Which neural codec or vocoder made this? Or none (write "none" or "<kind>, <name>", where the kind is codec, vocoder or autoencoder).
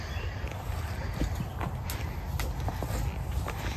none